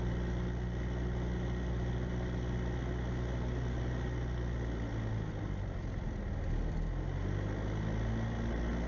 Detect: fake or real real